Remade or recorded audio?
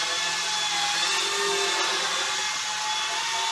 recorded